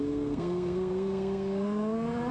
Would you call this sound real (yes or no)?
no